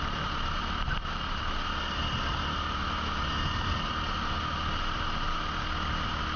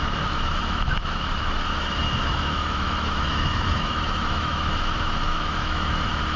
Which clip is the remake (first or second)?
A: second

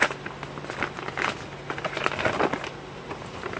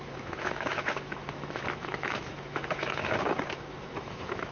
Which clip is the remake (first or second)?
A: second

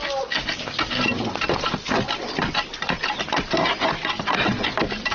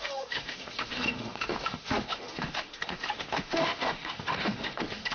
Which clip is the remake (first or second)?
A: second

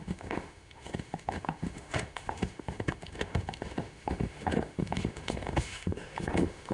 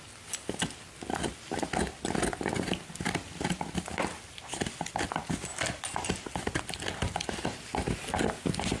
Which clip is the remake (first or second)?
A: first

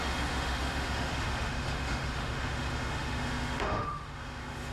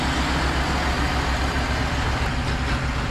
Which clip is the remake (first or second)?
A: first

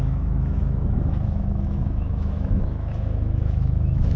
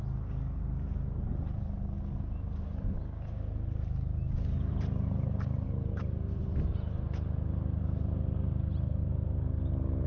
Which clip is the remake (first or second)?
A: first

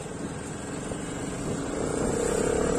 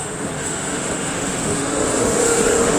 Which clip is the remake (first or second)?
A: second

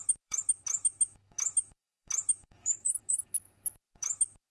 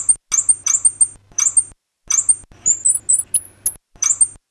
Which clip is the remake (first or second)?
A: first